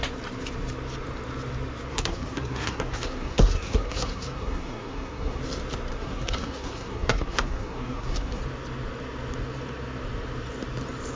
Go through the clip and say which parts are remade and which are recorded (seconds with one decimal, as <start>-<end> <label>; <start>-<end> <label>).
0.0-1.9 recorded; 1.9-5.4 remade; 5.4-5.9 recorded; 5.9-8.4 remade; 8.4-11.2 recorded